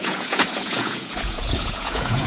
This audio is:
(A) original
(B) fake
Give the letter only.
B